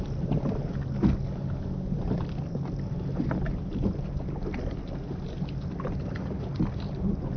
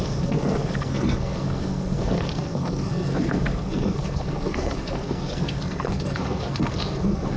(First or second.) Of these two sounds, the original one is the first